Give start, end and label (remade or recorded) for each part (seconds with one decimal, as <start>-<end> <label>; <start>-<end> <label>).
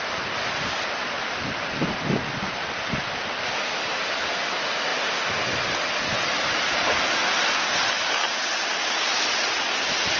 0.0-10.2 recorded